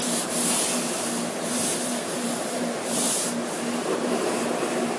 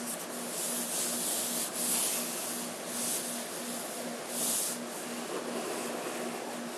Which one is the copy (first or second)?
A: first